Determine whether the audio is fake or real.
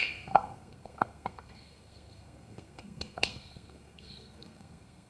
fake